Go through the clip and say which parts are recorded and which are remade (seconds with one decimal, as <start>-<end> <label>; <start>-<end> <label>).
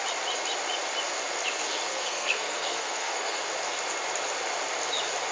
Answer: 0.0-1.9 recorded; 1.9-3.4 remade; 3.4-5.3 recorded